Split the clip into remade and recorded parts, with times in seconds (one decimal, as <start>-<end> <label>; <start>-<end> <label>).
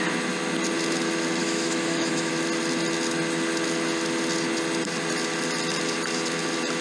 0.0-1.4 recorded; 1.4-2.3 remade; 2.3-6.8 recorded